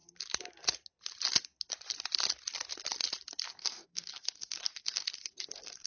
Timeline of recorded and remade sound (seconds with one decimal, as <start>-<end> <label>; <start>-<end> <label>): 0.0-3.5 recorded; 3.5-5.9 remade